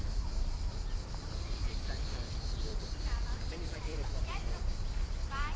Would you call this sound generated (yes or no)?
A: yes